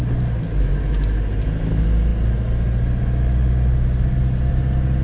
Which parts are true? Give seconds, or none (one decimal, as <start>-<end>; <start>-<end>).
0.0-5.0